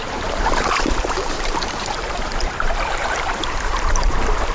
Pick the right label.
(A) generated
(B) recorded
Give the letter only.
A